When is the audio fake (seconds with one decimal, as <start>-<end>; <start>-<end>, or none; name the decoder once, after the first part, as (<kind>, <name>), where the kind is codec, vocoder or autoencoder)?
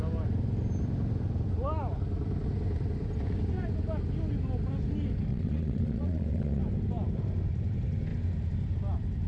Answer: 5.3-6.6 (vocoder, Vocos)